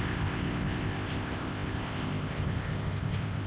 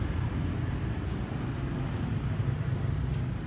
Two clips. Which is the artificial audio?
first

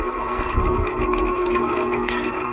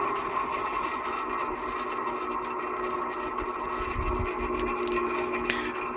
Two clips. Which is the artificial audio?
first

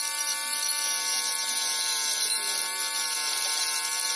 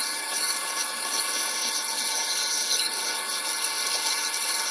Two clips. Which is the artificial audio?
second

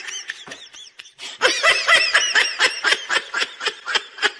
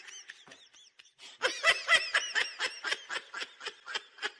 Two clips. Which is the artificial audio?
first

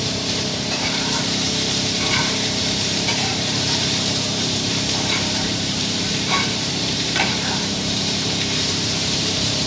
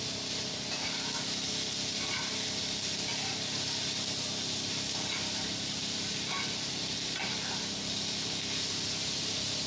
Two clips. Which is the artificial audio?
first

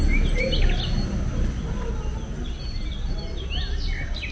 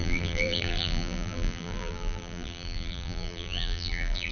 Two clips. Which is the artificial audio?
second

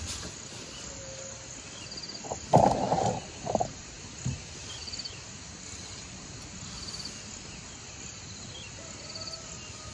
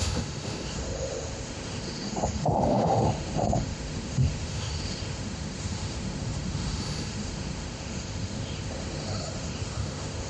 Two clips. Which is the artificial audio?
second